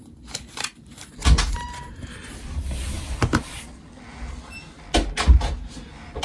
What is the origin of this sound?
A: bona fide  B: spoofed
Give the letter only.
A